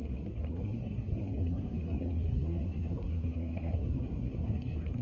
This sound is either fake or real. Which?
fake